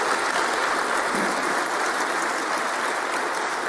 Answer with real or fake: real